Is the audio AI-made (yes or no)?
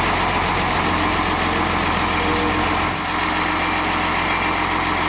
no